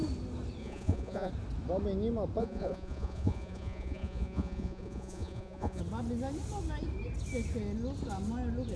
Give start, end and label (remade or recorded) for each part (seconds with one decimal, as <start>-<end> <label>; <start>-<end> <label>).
0.0-0.6 recorded; 0.6-1.3 remade; 1.3-2.4 recorded; 2.4-5.8 remade; 5.8-8.8 recorded